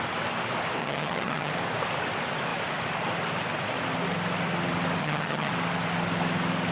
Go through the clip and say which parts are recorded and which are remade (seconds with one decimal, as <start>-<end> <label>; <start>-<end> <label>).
0.0-0.8 recorded; 0.8-1.5 remade; 1.5-5.0 recorded; 5.0-5.5 remade; 5.5-6.7 recorded